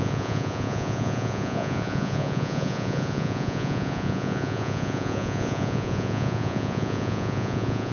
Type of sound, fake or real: fake